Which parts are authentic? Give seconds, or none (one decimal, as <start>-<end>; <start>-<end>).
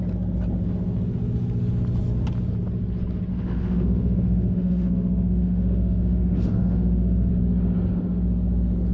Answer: 0.0-3.3; 7.3-8.9